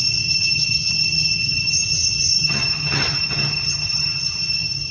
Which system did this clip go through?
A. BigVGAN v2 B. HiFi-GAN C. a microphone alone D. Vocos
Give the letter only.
B